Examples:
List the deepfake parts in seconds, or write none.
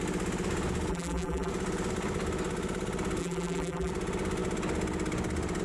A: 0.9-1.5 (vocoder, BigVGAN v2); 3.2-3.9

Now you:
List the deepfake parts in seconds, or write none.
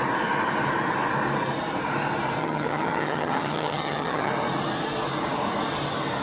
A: 2.4-4.3 (vocoder, HiFi-GAN)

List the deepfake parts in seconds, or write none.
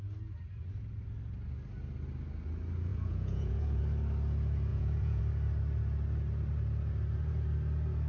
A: 2.9-3.8 (vocoder, Vocos); 4.7-5.2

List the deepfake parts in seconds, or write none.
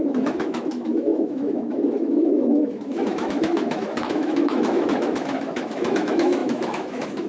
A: 0.0-7.3 (autoencoder, DAC-VAE)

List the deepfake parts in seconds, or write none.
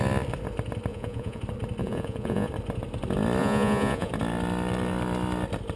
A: 0.9-1.4 (vocoder, Vocos); 1.8-2.5; 3.4-4.1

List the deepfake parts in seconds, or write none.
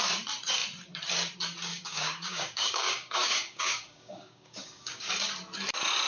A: 1.7-5.1 (codec, DAC)